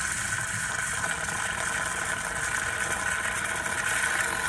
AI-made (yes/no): no